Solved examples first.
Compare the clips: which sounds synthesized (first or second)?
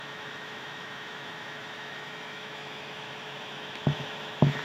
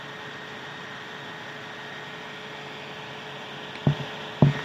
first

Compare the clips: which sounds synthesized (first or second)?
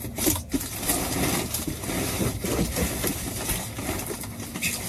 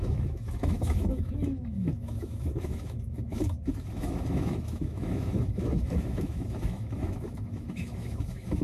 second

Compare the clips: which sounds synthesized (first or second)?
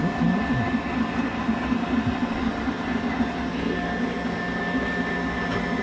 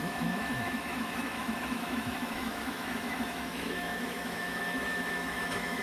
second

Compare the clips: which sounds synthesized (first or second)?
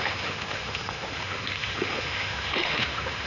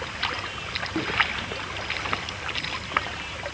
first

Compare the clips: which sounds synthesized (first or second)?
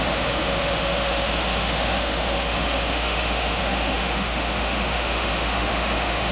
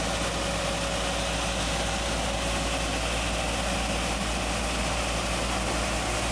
first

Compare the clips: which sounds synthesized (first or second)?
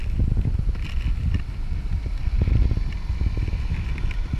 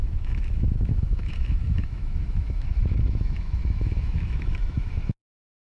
second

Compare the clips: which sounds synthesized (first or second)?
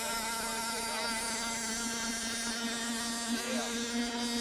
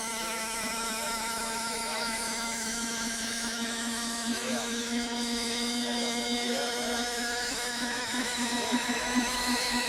second